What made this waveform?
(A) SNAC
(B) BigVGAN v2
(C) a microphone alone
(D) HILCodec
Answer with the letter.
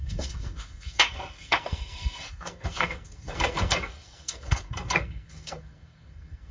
A